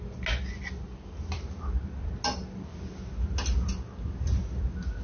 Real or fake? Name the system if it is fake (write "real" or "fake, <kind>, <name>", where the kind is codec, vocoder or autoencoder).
real